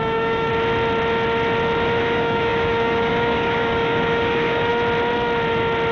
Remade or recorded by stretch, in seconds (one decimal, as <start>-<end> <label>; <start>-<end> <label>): 0.0-0.5 remade; 0.5-2.0 recorded; 2.0-4.7 remade; 4.7-5.9 recorded